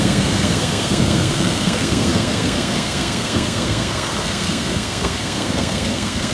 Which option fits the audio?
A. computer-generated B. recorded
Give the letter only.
A